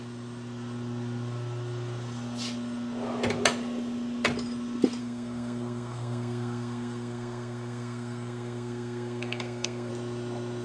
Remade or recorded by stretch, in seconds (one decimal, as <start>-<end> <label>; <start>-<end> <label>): 0.0-5.0 recorded; 5.0-9.9 remade; 9.9-10.6 recorded